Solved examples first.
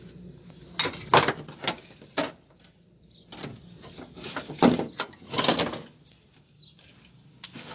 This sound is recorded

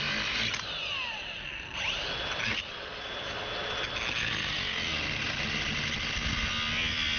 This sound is recorded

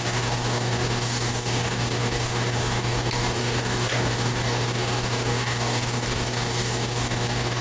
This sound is remade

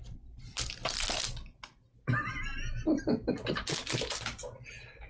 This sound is recorded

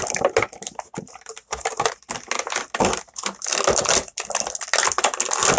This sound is recorded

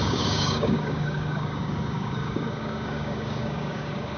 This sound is remade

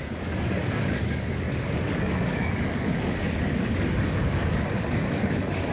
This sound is remade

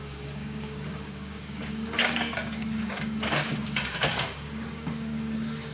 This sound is remade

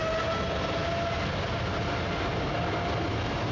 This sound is recorded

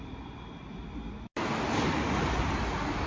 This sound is recorded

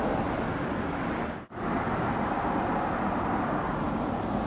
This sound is recorded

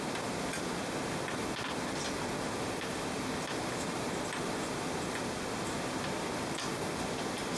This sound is recorded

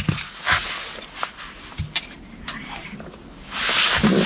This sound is recorded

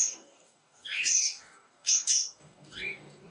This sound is remade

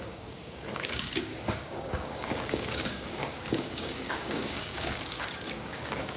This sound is remade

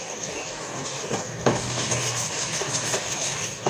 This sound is remade